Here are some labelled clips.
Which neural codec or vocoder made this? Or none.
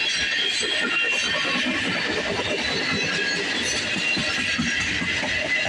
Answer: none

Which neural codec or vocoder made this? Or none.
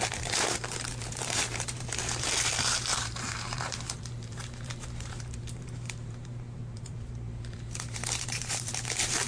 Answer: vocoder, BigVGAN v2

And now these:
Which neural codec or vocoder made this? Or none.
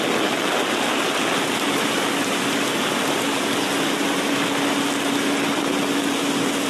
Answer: none